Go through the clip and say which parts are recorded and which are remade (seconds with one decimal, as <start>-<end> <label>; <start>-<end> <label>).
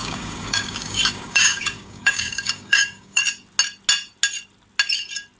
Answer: 0.0-3.2 remade; 3.2-5.4 recorded